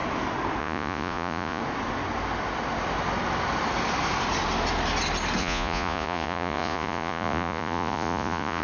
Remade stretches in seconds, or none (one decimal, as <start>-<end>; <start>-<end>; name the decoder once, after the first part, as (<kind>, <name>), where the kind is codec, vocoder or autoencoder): 0.6-1.6 (vocoder, Vocos); 5.4-8.6